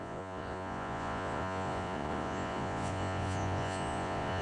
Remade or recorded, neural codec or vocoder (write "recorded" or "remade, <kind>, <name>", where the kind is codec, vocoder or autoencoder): remade, vocoder, Vocos